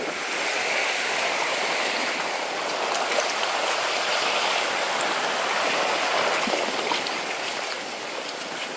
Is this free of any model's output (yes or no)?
yes